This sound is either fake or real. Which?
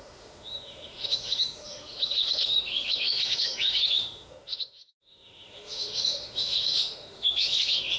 fake